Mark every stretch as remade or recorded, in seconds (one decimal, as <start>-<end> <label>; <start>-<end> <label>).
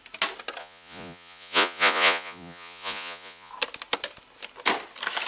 0.0-0.6 recorded; 0.6-3.5 remade; 3.5-5.3 recorded